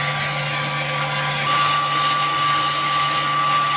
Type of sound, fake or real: real